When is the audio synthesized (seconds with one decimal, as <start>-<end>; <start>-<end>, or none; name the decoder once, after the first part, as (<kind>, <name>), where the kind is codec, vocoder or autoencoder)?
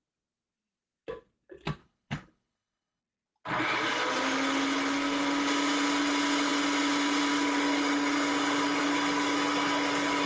1.8-3.0 (codec, HILCodec)